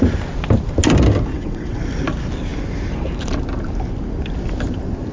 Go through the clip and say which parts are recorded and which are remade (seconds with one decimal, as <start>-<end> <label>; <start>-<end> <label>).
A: 0.0-1.3 recorded; 1.3-1.8 remade; 1.8-5.1 recorded